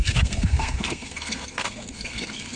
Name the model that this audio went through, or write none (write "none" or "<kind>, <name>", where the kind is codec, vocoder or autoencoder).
codec, SNAC